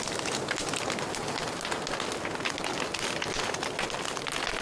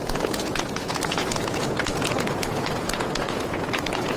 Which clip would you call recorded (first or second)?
first